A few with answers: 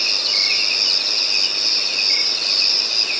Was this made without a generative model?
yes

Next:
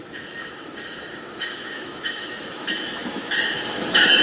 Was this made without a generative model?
no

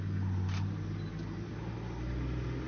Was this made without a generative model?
yes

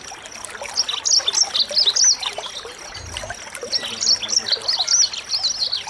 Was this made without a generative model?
yes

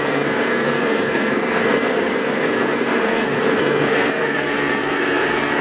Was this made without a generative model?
no